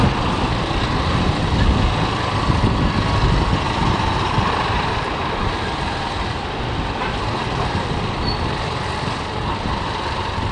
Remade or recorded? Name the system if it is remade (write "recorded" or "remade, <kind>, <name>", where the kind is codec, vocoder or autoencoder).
remade, vocoder, BigVGAN v2